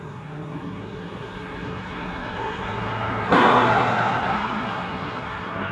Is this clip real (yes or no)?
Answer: no